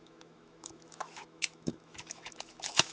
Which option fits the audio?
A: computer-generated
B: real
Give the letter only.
A